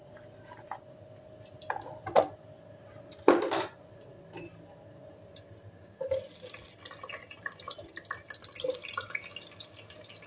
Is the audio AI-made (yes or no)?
no